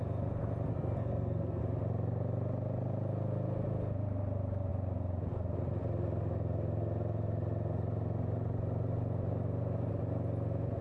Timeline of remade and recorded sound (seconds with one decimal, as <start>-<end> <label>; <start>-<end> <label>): 0.0-0.7 recorded; 0.7-1.6 remade; 1.6-10.8 recorded